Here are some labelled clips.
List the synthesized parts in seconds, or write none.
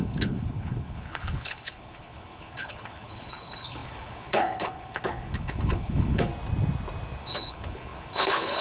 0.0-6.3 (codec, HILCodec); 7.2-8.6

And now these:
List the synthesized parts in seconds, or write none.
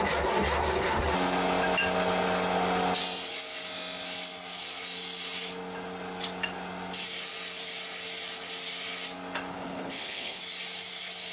9.5-10.4 (codec, HILCodec)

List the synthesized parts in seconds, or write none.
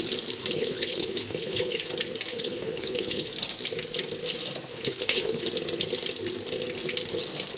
0.4-1.9 (codec, HILCodec); 2.3-3.3; 4.7-5.4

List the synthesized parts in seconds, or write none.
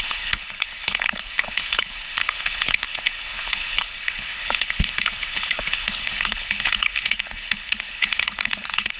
0.0-9.0 (codec, HILCodec)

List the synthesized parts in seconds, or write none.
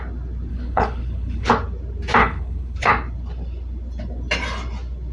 0.5-1.5 (codec, HILCodec); 2.2-2.9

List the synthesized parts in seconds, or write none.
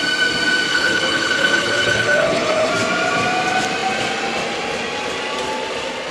0.7-2.7 (codec, HILCodec)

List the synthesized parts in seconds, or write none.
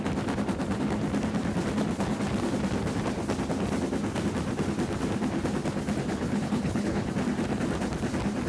6.1-7.1 (codec, HILCodec)